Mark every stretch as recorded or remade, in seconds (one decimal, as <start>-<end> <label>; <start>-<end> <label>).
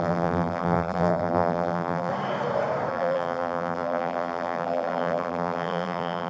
0.0-2.1 remade; 2.1-2.9 recorded; 2.9-6.3 remade